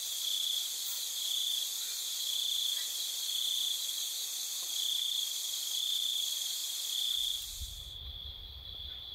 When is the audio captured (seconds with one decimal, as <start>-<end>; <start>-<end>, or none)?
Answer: 0.0-9.1